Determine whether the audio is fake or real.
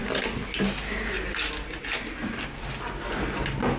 real